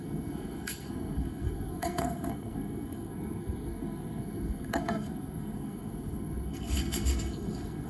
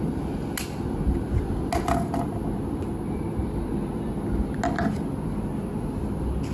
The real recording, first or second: second